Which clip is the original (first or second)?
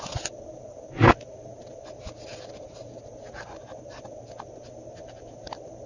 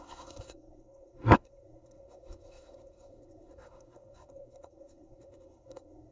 first